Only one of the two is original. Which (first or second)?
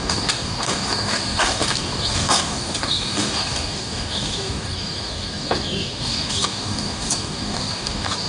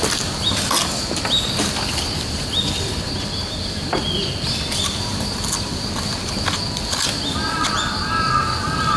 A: second